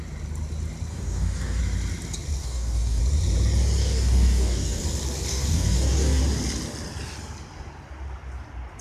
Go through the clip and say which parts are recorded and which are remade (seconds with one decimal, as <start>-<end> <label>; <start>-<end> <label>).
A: 0.0-0.9 recorded; 0.9-1.6 remade; 1.6-2.4 recorded; 2.4-3.0 remade; 3.0-3.8 recorded; 3.8-4.8 remade; 4.8-5.3 recorded; 5.3-6.2 remade; 6.2-8.8 recorded